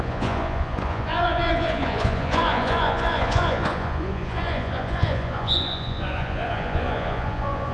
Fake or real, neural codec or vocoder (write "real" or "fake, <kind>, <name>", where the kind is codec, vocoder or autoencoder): fake, vocoder, Vocos